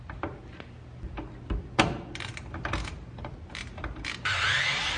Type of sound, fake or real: real